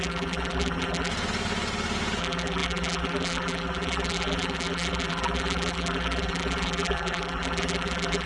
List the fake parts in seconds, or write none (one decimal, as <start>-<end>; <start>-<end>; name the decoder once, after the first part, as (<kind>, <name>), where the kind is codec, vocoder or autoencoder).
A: 0.0-1.1 (vocoder, BigVGAN v2); 2.2-8.3